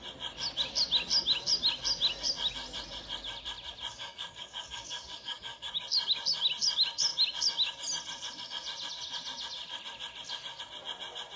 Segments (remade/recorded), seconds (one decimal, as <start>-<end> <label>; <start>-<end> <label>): 0.0-3.9 recorded; 3.9-5.8 remade; 5.8-11.4 recorded